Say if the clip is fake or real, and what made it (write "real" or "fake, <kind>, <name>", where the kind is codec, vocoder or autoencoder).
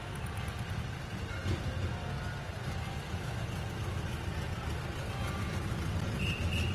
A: real